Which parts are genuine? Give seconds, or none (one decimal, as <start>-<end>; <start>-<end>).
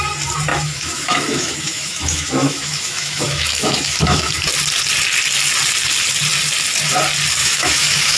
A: 0.0-0.5; 4.3-7.4